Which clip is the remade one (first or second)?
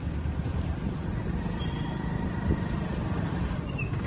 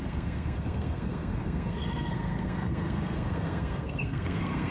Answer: second